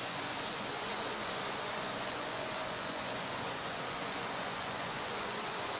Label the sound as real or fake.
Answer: fake